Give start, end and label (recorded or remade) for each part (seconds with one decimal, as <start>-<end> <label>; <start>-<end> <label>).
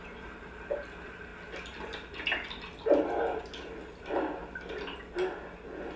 0.0-1.3 remade; 1.3-4.0 recorded; 4.0-4.4 remade; 4.4-6.0 recorded